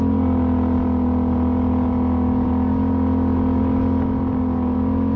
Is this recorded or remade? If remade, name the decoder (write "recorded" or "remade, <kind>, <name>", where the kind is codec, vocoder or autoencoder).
recorded